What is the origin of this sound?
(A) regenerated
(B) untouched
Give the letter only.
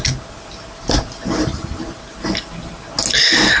B